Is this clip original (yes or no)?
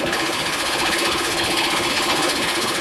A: no